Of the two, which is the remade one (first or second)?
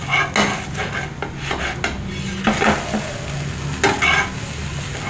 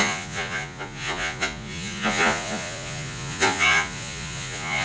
second